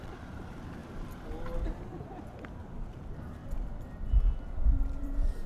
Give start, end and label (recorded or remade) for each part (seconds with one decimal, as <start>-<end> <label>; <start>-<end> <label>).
0.0-0.8 remade; 0.8-2.6 recorded; 2.6-3.4 remade; 3.4-4.5 recorded; 4.5-5.5 remade